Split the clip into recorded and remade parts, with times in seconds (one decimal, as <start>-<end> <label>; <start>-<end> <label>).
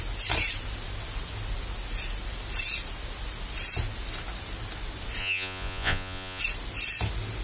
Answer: 0.0-5.2 recorded; 5.2-6.4 remade; 6.4-7.4 recorded